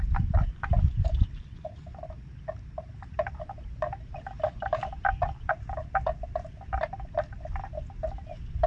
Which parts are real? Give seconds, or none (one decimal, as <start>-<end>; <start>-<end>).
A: 5.8-8.7